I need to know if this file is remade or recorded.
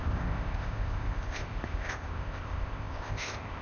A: remade